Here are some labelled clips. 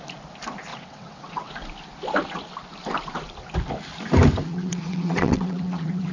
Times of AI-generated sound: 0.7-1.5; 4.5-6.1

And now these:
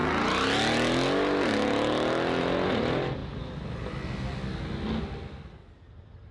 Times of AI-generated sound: none

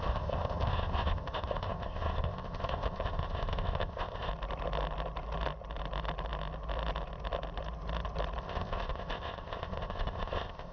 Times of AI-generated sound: 0.0-4.3; 8.4-10.7

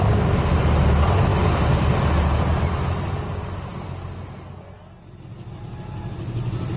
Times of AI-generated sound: none

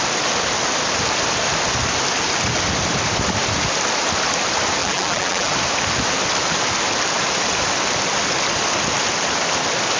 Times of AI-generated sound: 4.8-5.5